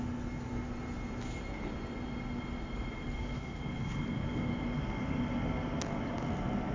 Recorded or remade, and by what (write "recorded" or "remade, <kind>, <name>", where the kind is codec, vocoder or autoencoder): recorded